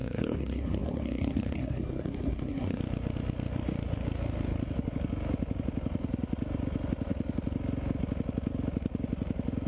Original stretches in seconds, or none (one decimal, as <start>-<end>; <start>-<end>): 2.8-9.7